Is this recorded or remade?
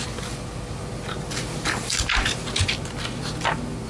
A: recorded